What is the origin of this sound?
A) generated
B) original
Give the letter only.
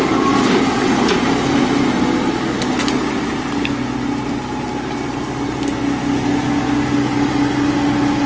B